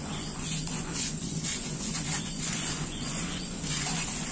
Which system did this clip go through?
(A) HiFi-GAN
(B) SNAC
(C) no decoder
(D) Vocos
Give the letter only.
D